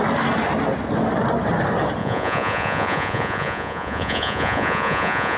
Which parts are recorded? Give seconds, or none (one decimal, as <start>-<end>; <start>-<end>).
0.0-2.0